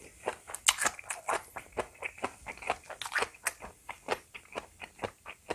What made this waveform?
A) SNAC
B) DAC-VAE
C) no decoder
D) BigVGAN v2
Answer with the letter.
C